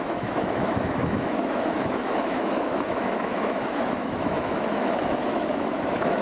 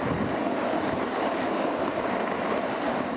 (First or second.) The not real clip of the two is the first